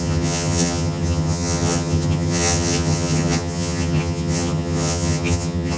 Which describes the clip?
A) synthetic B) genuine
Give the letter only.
A